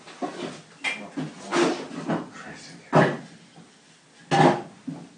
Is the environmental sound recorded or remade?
recorded